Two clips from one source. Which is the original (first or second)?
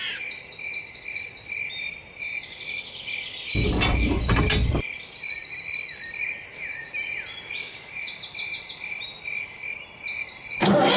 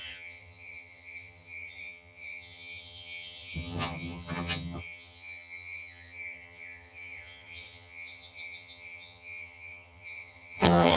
first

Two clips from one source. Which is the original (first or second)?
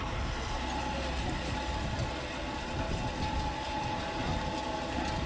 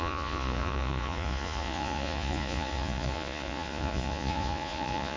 first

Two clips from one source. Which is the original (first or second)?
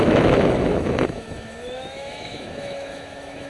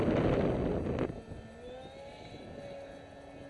second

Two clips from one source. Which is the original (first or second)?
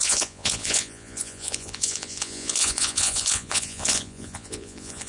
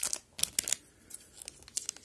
second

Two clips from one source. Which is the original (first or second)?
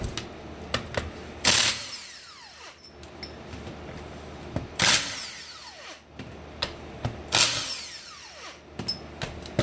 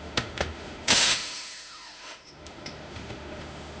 first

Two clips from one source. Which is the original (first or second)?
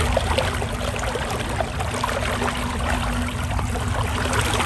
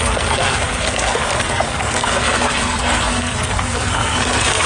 first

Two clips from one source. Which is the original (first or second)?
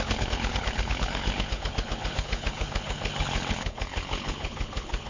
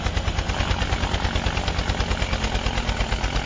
second